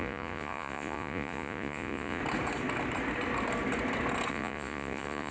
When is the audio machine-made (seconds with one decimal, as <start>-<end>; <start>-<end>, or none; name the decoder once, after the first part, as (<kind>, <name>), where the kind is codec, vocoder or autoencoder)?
0.0-2.2 (vocoder, Vocos); 4.3-5.3